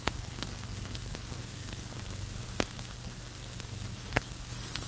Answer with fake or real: fake